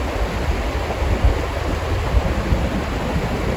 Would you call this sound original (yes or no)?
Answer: yes